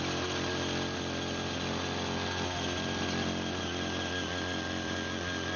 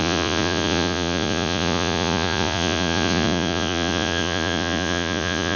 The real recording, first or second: first